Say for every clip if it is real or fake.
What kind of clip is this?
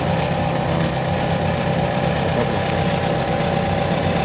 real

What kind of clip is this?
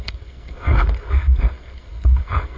fake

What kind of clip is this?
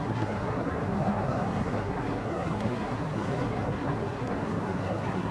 fake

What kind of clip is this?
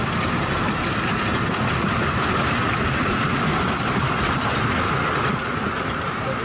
real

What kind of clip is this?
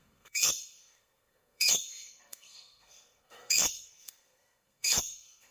fake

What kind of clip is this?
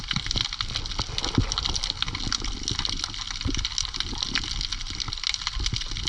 real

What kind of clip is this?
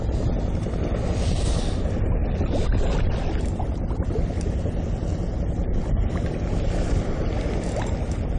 real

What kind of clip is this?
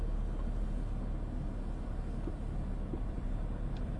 real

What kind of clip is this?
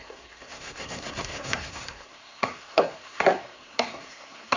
fake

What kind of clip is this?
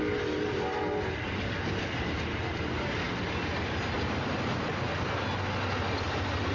real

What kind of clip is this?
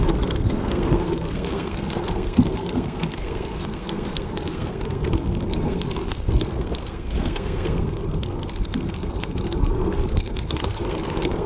fake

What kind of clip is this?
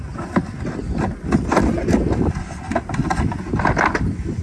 real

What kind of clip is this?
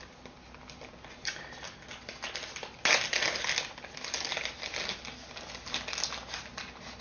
real